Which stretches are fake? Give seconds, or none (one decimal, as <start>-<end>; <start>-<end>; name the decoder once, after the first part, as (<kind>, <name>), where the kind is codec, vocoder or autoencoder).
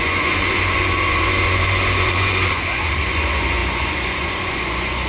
0.0-5.1 (vocoder, Vocos)